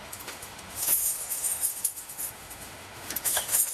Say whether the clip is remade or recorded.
remade